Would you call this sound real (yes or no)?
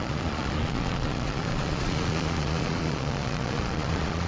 no